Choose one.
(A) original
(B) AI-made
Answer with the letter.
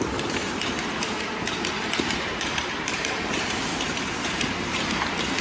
B